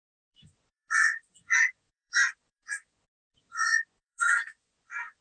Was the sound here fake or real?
fake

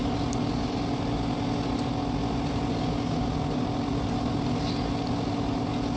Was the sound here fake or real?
real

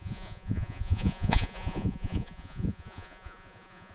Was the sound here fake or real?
fake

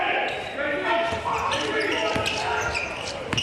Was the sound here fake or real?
real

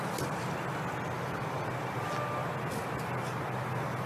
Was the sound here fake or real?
real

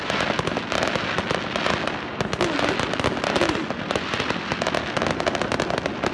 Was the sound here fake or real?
real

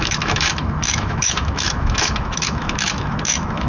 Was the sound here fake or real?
fake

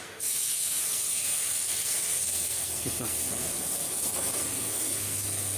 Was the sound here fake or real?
fake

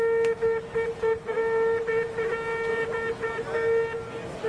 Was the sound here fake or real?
real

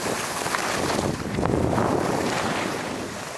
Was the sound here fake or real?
real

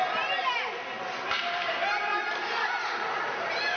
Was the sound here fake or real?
real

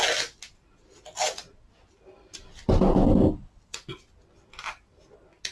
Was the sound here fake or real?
real